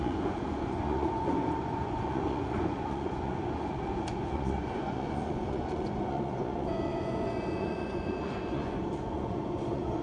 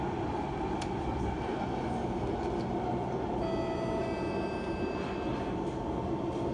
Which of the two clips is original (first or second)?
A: second